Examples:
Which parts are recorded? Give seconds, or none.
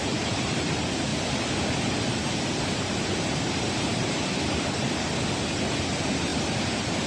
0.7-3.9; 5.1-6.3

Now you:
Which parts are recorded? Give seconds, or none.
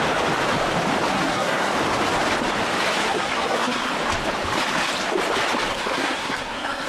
0.0-1.1; 1.7-3.0; 3.9-5.7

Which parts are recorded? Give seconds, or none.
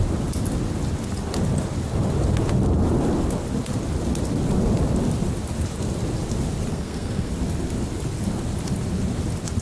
0.0-6.7; 7.3-9.6